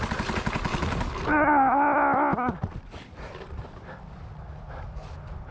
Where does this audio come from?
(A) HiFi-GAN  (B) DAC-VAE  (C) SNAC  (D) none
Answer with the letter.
D